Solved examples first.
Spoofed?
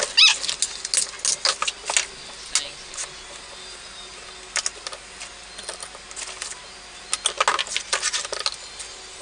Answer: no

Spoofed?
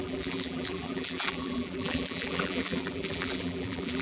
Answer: yes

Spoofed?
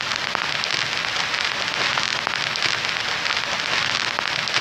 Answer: no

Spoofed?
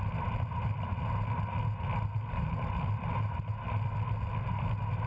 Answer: no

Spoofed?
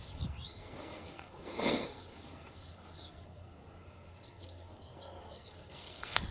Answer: yes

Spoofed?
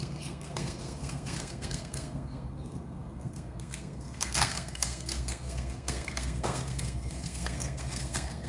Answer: yes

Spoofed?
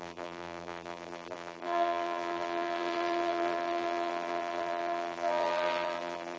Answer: yes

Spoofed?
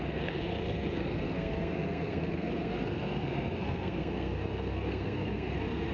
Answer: yes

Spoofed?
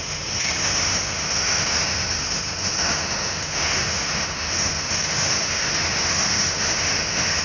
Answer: yes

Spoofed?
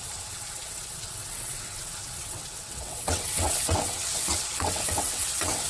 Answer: yes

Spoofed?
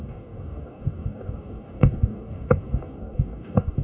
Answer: yes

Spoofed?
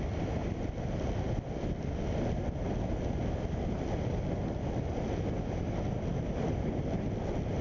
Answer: no